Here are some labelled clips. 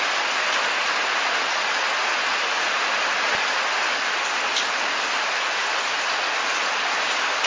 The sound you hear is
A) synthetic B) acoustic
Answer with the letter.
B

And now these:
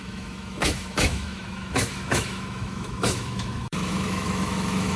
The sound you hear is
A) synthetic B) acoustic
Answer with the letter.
A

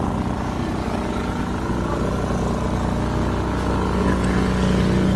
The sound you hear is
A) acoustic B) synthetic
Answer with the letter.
A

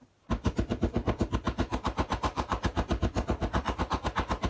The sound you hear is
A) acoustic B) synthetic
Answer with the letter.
B